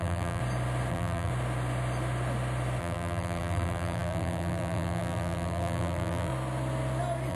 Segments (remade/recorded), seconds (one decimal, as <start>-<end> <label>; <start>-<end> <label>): 0.0-0.4 remade; 0.4-0.9 recorded; 0.9-1.3 remade; 1.3-2.8 recorded; 2.8-6.3 remade; 6.3-7.3 recorded